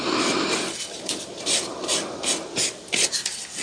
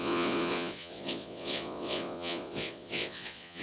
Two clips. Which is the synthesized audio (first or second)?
second